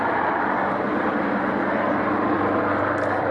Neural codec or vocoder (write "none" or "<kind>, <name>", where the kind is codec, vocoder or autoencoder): none